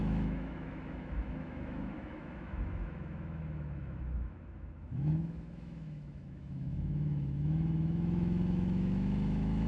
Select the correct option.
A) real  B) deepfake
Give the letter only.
B